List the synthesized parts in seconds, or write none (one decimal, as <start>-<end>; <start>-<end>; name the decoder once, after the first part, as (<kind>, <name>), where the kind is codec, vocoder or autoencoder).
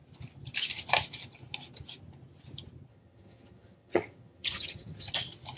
2.9-5.1 (vocoder, HiFi-GAN)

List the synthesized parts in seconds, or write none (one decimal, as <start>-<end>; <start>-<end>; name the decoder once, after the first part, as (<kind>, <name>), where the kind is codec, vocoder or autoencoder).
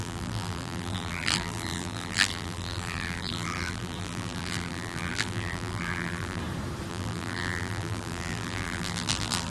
0.0-6.4 (vocoder, BigVGAN v2); 6.9-9.5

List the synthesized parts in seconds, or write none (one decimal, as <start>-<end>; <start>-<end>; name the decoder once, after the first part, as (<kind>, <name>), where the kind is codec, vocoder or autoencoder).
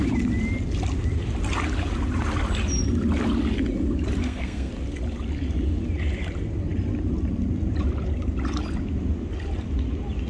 4.2-4.7 (codec, SNAC)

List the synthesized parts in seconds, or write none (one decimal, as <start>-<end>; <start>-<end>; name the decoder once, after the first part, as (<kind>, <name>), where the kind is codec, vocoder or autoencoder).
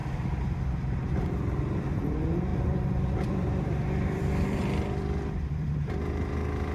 2.5-5.9 (vocoder, BigVGAN v2)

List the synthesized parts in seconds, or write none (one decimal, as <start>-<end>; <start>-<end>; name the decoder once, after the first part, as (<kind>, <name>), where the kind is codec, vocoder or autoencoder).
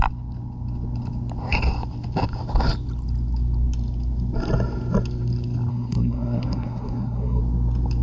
5.7-7.4 (codec, SNAC)